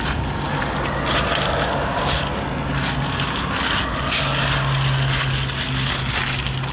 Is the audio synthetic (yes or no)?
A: no